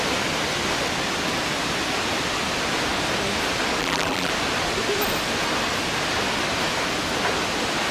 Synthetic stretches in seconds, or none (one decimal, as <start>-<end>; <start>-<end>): 3.8-4.3